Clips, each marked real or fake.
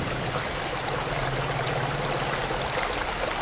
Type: real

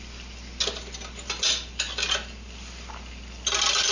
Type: real